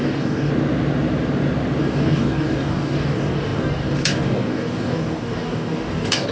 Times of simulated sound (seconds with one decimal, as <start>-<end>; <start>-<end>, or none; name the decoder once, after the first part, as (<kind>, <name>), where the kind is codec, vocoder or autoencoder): 0.0-0.5 (codec, DAC); 1.8-6.3